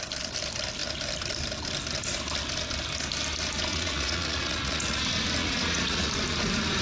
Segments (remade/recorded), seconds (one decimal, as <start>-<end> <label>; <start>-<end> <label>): 0.0-3.7 recorded; 3.7-5.0 remade; 5.0-5.4 recorded; 5.4-6.1 remade; 6.1-6.8 recorded